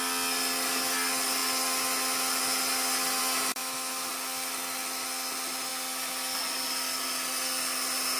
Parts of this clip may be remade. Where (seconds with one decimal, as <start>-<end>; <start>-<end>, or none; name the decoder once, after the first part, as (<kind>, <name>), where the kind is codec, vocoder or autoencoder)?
3.6-4.1 (autoencoder, DAC-VAE)